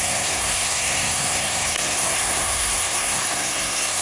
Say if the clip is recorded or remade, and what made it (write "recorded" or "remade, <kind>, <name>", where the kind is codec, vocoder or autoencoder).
remade, codec, SNAC